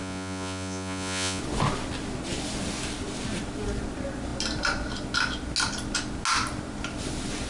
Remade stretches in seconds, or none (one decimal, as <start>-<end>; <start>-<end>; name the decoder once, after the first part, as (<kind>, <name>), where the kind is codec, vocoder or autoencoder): 0.0-1.4 (vocoder, Vocos)